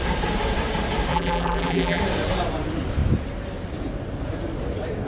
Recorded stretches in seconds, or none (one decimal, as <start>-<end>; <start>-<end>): 0.0-1.1; 2.0-5.1